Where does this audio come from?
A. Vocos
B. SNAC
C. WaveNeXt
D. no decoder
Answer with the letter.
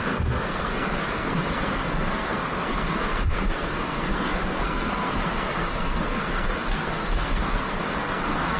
B